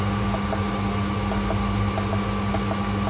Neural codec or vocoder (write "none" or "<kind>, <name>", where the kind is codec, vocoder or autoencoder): none